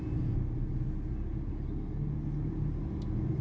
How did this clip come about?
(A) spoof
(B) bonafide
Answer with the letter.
B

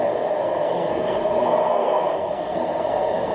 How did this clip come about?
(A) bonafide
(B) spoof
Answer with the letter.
B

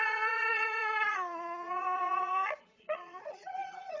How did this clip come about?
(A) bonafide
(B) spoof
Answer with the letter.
B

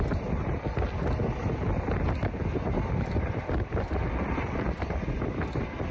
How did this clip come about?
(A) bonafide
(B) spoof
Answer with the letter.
A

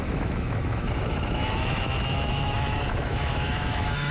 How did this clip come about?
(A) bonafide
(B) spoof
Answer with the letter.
B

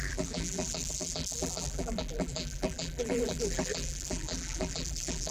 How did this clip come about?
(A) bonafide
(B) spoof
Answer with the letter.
B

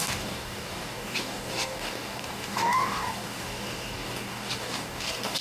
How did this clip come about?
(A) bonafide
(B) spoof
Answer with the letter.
B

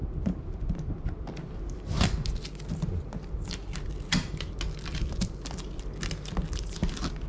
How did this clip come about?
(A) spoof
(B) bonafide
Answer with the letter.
B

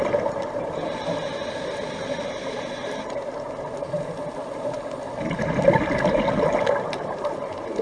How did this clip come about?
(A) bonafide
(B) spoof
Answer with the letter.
A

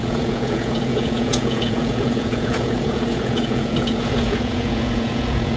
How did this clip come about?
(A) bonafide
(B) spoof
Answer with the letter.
B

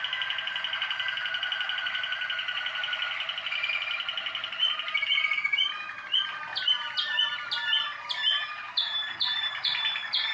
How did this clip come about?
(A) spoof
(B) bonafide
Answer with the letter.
B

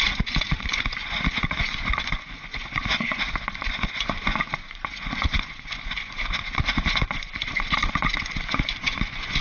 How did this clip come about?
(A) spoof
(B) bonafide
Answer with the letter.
A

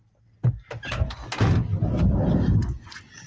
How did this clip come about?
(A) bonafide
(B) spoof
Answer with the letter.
A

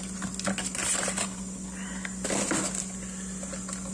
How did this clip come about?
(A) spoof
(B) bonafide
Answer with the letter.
B